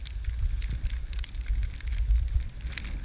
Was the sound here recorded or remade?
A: recorded